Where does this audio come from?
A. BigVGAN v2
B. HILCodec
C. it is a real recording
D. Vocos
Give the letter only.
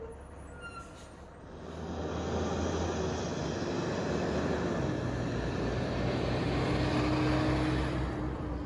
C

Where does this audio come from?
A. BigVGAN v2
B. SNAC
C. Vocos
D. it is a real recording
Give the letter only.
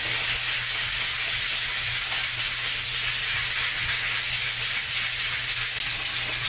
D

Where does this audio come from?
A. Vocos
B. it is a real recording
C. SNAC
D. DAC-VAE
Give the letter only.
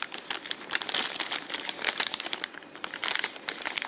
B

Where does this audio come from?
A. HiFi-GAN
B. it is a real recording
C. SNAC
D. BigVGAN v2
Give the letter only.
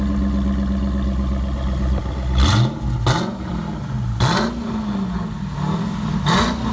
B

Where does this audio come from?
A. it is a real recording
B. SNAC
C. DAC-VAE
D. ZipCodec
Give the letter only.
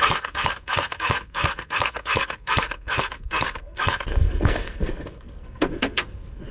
B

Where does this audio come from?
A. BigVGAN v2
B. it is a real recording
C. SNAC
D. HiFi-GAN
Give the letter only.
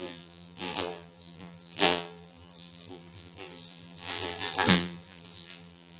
A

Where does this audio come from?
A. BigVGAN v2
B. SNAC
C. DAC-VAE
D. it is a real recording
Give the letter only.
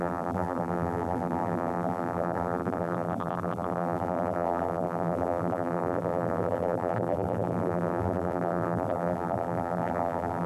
A